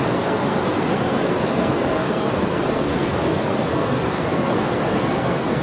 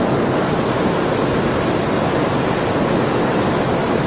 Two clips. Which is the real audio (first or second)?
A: second